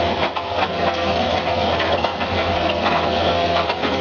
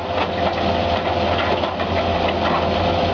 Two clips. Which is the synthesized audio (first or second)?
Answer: first